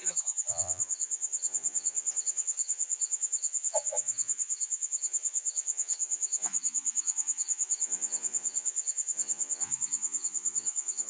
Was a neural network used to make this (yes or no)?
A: yes